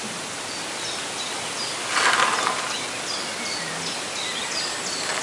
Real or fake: real